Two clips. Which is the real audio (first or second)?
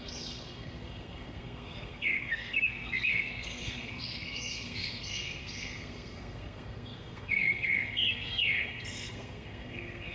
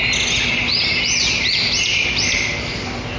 second